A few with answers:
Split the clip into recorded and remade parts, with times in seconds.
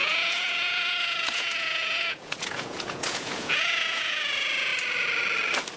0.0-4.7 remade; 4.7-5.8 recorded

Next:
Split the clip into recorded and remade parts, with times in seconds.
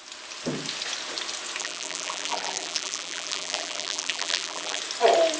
0.0-1.6 recorded; 1.6-4.8 remade; 4.8-5.4 recorded